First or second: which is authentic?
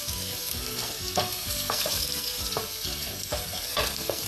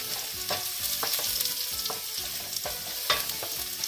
second